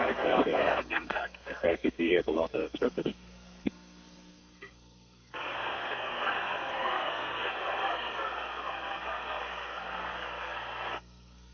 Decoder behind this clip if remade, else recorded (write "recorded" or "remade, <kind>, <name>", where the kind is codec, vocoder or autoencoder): remade, codec, SNAC